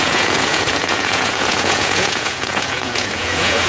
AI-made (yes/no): yes